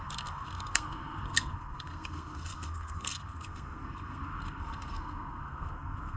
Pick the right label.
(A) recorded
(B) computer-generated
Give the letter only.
B